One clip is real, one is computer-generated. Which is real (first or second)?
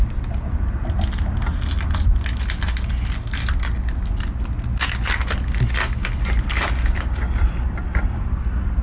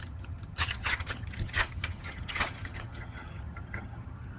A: first